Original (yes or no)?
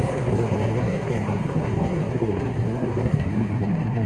no